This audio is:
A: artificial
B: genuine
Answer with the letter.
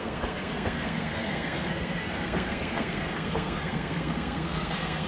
A